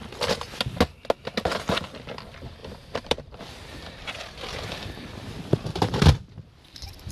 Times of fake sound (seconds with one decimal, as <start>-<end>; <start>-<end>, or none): 1.4-7.1